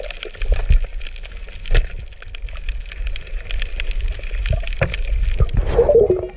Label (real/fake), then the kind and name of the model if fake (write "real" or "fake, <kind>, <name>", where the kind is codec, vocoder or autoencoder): real